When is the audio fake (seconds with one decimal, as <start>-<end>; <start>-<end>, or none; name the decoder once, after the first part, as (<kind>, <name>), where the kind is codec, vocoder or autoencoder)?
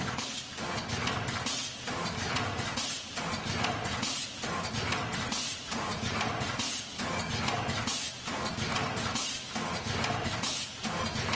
2.5-3.2 (vocoder, Vocos); 5.3-6.3